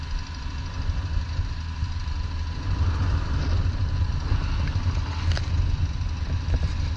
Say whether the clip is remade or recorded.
recorded